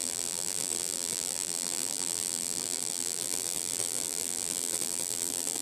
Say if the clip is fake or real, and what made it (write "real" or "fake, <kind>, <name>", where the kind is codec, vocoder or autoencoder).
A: fake, vocoder, BigVGAN v2